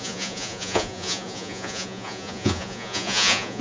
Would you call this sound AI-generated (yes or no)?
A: yes